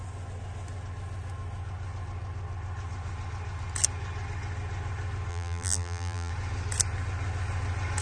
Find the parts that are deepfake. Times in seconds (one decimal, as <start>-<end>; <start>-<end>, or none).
5.3-6.3